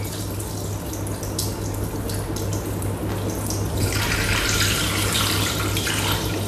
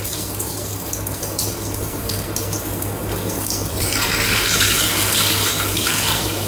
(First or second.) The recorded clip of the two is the first